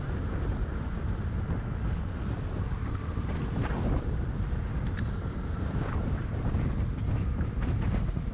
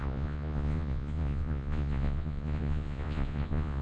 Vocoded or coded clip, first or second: second